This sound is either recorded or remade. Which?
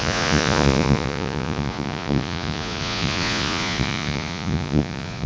remade